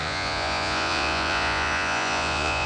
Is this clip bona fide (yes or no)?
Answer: no